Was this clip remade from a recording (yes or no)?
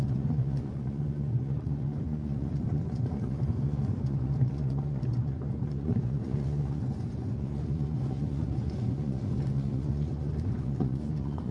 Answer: yes